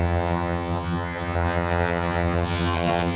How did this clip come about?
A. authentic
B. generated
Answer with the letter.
B